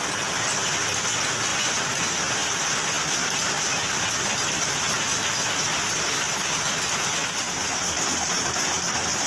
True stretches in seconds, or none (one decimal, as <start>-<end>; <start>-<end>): 0.0-1.5; 2.1-9.3